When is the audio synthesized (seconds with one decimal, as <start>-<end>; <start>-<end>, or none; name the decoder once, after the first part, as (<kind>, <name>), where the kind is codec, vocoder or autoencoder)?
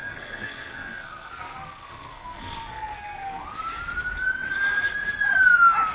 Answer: 0.0-3.4 (codec, SNAC)